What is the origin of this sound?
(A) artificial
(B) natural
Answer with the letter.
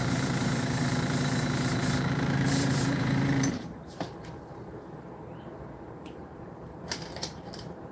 A